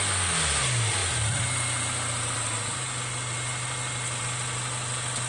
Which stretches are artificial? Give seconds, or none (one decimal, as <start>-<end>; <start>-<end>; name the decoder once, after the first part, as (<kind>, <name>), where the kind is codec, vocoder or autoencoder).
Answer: none